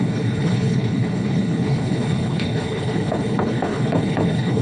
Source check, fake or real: fake